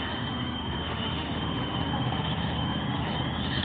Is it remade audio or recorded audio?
remade